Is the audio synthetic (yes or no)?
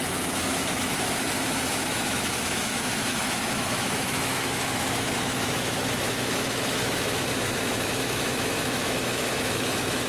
yes